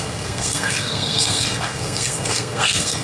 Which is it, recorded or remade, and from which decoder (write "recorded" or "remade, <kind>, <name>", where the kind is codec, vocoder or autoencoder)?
remade, codec, SNAC